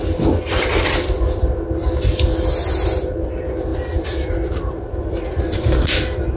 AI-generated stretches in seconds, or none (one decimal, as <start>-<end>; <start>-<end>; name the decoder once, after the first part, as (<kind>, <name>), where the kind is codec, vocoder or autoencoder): none